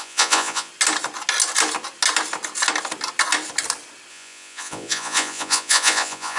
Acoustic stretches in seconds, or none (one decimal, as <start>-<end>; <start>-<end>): 0.7-4.1